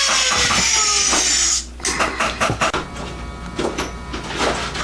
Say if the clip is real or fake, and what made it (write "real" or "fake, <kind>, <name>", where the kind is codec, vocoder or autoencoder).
real